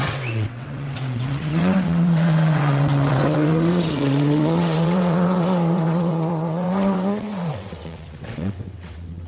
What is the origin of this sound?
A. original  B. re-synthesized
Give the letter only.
B